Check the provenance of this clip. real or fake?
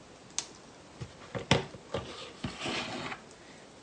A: real